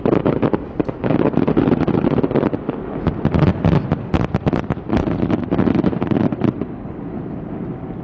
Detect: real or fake real